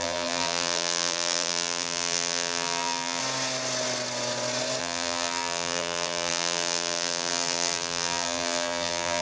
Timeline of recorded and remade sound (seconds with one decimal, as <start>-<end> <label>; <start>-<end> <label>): 0.0-3.2 remade; 3.2-4.8 recorded; 4.8-9.2 remade